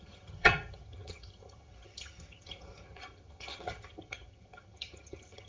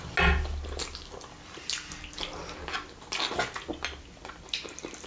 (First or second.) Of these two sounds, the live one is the second